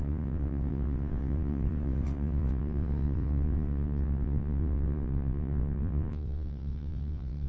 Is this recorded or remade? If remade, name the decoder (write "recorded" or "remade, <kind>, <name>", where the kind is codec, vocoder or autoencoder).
remade, vocoder, WaveNeXt